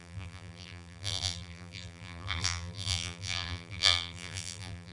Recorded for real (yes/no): no